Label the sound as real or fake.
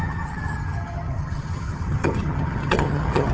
fake